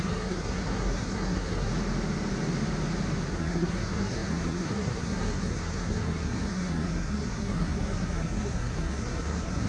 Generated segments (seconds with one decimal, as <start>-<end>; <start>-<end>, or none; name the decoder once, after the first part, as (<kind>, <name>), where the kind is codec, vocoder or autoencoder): 0.0-1.7 (codec, SNAC); 3.3-9.7